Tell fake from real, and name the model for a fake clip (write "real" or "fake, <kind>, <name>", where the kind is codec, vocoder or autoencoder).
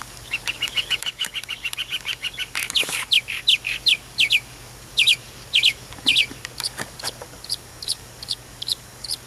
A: fake, codec, DAC